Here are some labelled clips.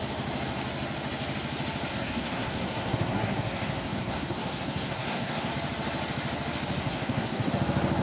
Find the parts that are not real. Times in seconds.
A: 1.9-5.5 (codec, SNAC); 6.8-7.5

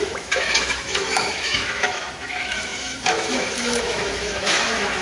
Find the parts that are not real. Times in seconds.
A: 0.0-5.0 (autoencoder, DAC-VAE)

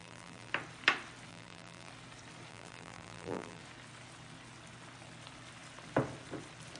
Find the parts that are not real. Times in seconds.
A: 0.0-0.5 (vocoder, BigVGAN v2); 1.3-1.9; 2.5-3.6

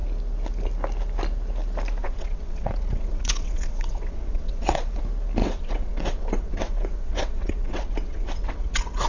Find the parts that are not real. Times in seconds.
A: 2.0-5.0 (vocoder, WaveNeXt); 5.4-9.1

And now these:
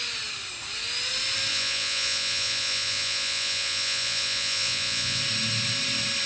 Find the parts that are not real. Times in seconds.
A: 1.5-5.2 (vocoder, Vocos)

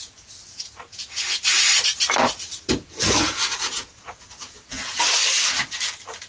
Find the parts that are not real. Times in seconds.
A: 0.0-1.2 (vocoder, Vocos); 2.7-4.9